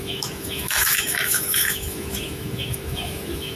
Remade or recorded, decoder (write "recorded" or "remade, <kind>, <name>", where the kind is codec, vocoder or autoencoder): remade, autoencoder, DAC-VAE